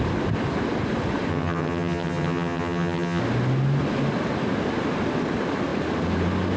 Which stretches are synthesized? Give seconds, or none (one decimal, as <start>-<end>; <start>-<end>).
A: 1.3-3.2